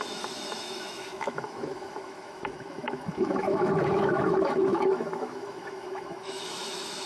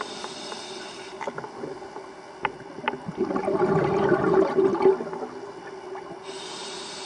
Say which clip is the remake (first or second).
first